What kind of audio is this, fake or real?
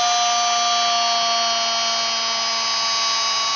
real